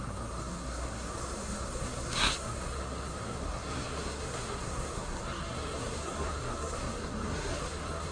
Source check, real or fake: fake